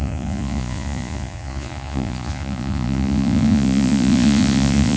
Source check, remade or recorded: remade